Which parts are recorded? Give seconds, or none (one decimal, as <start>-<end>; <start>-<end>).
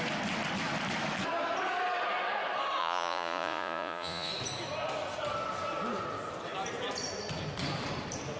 0.0-2.8; 4.3-8.4